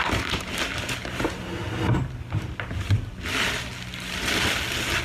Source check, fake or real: real